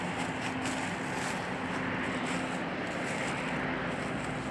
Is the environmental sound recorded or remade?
recorded